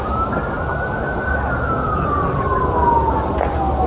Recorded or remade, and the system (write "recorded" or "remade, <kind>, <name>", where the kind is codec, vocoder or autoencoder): recorded